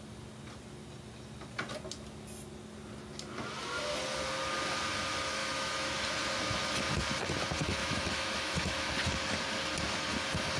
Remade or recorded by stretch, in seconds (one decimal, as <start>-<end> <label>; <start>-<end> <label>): 0.0-5.4 recorded; 5.4-6.0 remade; 6.0-7.8 recorded; 7.8-8.9 remade; 8.9-10.6 recorded